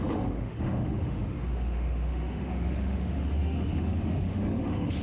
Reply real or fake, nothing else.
fake